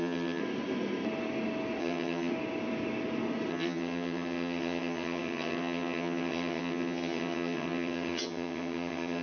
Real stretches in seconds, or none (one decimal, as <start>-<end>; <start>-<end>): 0.4-1.8; 2.3-3.5